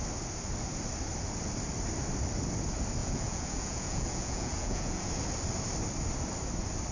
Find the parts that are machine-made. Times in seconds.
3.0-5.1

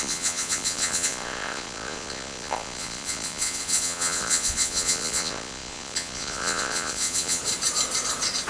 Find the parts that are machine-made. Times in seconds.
0.0-7.4

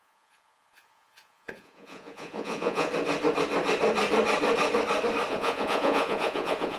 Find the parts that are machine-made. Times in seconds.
0.0-2.9; 5.3-6.8

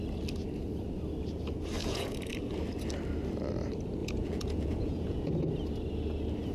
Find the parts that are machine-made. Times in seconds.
1.8-2.3; 4.0-5.3

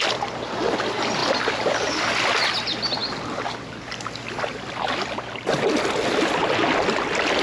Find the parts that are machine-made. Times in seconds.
none